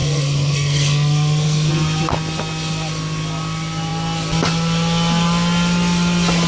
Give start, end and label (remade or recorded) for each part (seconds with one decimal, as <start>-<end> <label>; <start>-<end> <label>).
0.0-1.7 remade; 1.7-6.5 recorded